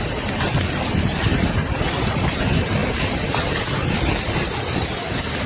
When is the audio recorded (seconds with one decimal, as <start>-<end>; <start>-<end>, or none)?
0.0-1.3; 2.2-5.5